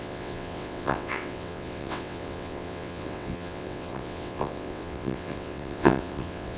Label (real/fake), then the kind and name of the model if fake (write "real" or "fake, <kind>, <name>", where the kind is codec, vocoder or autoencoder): fake, vocoder, WaveNeXt